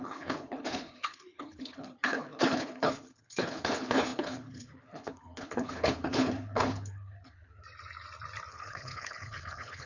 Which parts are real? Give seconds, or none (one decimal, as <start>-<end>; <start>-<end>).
7.6-8.5